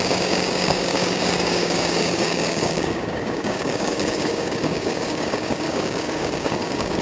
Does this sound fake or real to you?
fake